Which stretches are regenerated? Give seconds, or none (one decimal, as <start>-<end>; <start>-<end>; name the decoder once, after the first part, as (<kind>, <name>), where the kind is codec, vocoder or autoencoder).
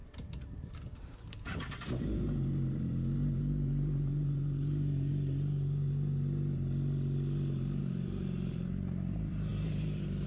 1.0-5.1 (vocoder, BigVGAN v2); 7.8-10.3